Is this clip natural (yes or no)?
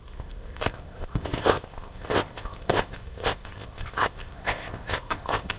no